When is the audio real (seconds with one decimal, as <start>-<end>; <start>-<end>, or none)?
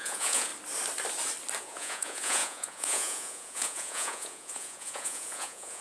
0.5-1.6